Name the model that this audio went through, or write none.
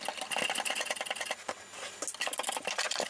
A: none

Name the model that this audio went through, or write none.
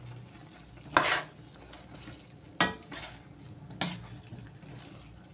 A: none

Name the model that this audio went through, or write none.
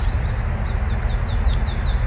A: none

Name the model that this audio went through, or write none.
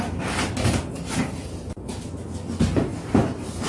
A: none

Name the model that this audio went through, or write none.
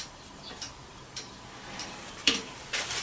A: vocoder, BigVGAN v2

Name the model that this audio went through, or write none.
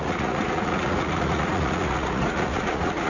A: vocoder, Vocos